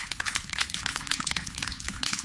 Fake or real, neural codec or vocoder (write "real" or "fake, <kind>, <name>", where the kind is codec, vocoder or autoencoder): fake, codec, HILCodec